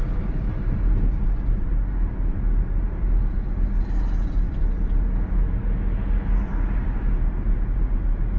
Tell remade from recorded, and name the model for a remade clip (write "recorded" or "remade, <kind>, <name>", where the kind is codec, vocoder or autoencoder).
recorded